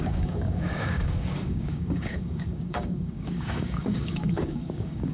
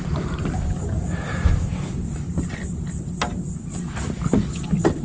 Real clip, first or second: second